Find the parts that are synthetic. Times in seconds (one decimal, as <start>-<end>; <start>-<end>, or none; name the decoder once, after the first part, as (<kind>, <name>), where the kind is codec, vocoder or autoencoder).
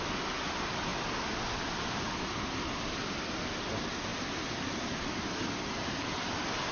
none